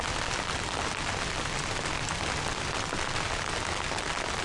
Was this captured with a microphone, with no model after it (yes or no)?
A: yes